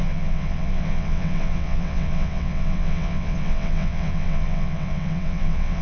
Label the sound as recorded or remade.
remade